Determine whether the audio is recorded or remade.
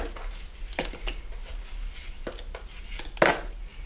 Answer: recorded